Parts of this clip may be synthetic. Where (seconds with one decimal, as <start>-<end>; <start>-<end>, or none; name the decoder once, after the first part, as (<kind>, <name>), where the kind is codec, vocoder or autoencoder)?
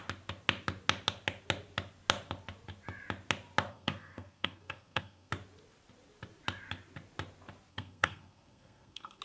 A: 3.7-5.3 (codec, SNAC); 7.7-9.2